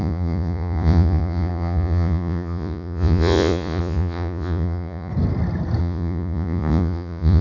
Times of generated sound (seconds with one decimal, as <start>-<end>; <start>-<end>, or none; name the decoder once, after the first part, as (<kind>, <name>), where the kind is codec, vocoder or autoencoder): 0.0-5.1 (vocoder, Vocos); 5.8-7.4